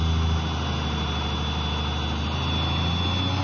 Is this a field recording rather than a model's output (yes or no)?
yes